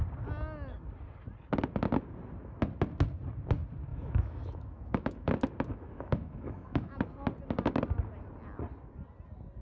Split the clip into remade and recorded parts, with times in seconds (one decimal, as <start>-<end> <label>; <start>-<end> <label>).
0.0-3.9 recorded; 3.9-5.3 remade; 5.3-5.7 recorded; 5.7-6.9 remade; 6.9-9.6 recorded